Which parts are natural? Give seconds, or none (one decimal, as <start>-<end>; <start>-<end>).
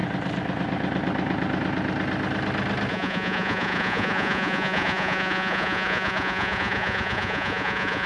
0.0-2.9